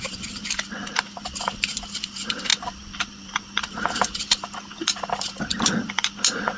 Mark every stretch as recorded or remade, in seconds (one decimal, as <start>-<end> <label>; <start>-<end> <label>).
0.0-6.6 recorded